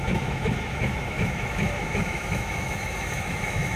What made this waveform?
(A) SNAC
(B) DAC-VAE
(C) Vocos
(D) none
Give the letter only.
B